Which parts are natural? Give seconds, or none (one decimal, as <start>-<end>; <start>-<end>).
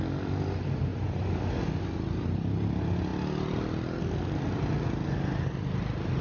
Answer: 0.0-6.2